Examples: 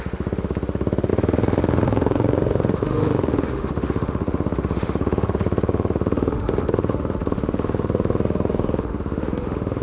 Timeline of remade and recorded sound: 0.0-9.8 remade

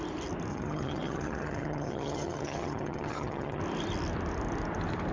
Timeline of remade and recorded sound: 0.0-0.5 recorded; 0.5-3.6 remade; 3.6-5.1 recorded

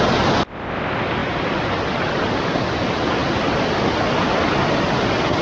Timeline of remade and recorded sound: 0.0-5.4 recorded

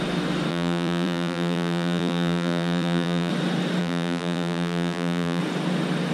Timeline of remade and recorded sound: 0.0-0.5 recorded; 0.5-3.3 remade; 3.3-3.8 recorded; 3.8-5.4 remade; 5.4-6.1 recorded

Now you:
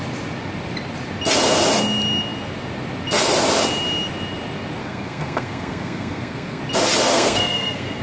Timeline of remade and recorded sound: 0.0-4.8 recorded; 4.8-6.6 remade; 6.6-7.1 recorded; 7.1-8.0 remade

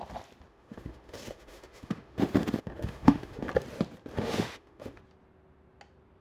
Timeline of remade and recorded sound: 0.0-0.5 recorded; 0.5-3.5 remade; 3.5-4.1 recorded; 4.1-5.0 remade; 5.0-6.2 recorded